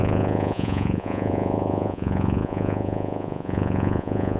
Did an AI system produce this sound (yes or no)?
yes